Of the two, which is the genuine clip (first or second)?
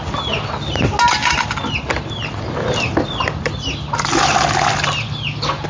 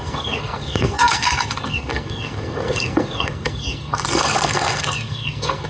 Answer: first